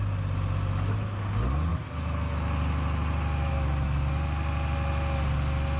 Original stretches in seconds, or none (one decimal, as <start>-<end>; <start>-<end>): 0.0-5.8